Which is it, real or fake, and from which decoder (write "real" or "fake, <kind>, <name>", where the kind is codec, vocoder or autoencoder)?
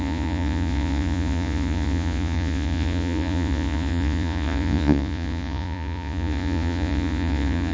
fake, vocoder, Vocos